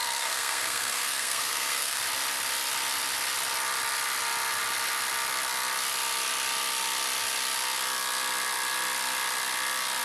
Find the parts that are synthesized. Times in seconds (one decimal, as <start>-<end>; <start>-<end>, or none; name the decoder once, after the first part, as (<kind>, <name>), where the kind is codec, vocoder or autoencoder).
0.0-2.0 (codec, SNAC)